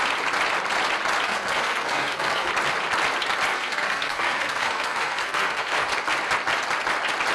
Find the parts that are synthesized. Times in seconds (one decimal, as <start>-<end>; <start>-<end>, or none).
1.3-2.5; 3.5-5.9

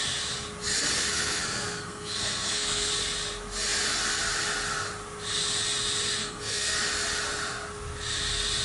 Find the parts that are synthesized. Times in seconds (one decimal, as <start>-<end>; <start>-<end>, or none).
1.1-2.9; 6.2-6.8

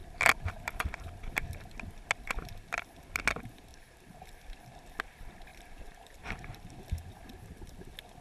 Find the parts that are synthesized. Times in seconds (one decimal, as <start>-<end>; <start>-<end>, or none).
3.7-4.3; 5.5-6.6